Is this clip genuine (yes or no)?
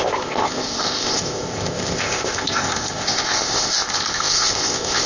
no